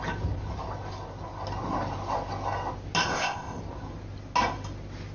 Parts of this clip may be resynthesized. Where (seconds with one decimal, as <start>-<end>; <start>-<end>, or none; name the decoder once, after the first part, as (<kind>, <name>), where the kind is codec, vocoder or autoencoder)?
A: 3.0-3.6 (codec, ZipCodec)